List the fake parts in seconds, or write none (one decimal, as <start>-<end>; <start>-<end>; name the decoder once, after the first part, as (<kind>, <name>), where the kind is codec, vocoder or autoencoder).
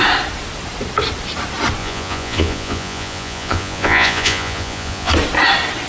1.8-5.1 (vocoder, Vocos)